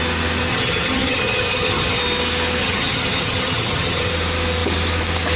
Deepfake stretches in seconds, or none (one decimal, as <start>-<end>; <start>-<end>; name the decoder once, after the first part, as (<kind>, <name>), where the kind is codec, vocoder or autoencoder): 0.5-2.0 (vocoder, HiFi-GAN); 2.6-4.1